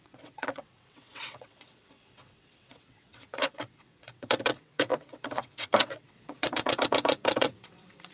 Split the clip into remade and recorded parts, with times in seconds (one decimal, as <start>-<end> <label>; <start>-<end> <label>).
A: 0.0-8.1 remade